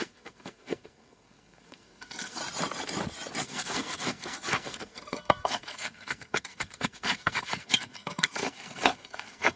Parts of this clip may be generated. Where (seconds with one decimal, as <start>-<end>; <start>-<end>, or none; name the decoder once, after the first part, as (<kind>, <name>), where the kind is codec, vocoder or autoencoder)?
0.0-2.4 (codec, SNAC); 3.4-9.6